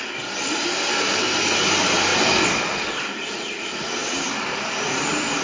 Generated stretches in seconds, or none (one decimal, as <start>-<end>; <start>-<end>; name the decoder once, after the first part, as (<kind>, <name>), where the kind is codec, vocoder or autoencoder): none